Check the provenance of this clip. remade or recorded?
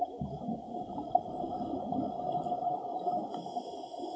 recorded